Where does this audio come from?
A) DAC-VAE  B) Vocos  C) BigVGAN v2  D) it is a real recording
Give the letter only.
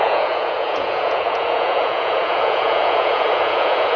B